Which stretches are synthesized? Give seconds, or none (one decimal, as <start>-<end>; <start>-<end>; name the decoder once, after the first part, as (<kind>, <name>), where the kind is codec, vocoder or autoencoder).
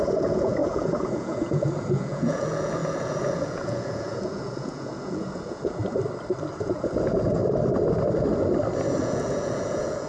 0.0-5.8 (vocoder, Vocos); 6.6-7.4; 9.0-10.1